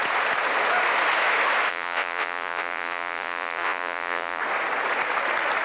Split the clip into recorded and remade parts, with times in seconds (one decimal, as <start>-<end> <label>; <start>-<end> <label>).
0.0-1.7 recorded; 1.7-4.4 remade; 4.4-5.6 recorded